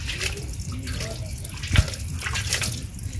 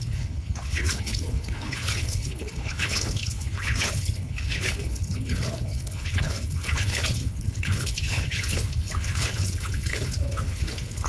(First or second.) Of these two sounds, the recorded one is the first